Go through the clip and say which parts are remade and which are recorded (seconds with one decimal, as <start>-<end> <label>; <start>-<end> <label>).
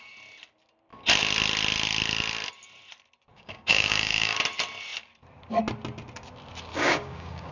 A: 0.0-3.3 recorded; 3.3-4.4 remade; 4.4-6.7 recorded; 6.7-7.5 remade